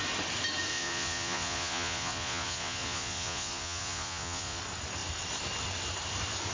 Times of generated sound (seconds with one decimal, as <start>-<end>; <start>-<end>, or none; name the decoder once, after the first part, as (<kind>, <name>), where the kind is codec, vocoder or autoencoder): 0.7-4.6 (vocoder, Vocos)